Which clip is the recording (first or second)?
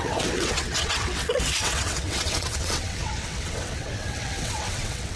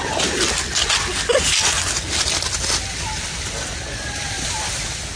second